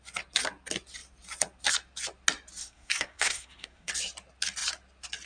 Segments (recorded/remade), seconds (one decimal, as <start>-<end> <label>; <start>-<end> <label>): 0.0-2.6 recorded; 2.6-3.9 remade; 3.9-5.3 recorded